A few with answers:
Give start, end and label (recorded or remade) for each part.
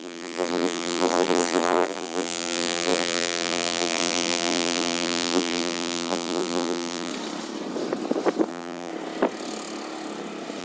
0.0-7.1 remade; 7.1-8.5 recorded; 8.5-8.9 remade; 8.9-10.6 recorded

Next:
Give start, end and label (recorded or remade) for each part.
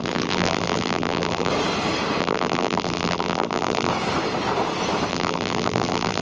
0.0-1.5 remade; 1.5-2.2 recorded; 2.2-3.9 remade; 3.9-5.1 recorded; 5.1-6.2 remade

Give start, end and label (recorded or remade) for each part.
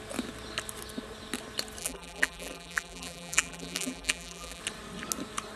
0.0-1.8 recorded; 1.8-4.6 remade; 4.6-5.6 recorded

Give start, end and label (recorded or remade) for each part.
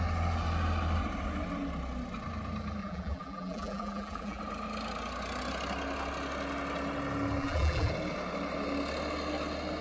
0.0-2.8 recorded; 2.8-4.4 remade; 4.4-7.4 recorded; 7.4-7.9 remade; 7.9-9.8 recorded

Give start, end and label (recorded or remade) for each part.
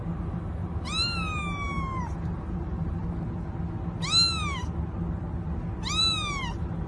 0.0-0.6 remade; 0.6-2.0 recorded; 2.0-3.0 remade; 3.0-6.0 recorded; 6.0-6.9 remade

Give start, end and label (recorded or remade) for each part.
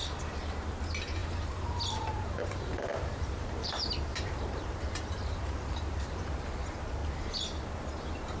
0.0-1.2 recorded; 1.2-6.2 remade; 6.2-7.0 recorded; 7.0-7.6 remade; 7.6-8.4 recorded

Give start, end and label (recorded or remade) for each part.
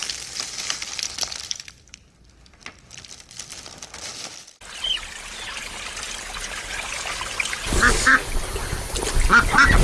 0.0-8.1 remade; 8.1-9.8 recorded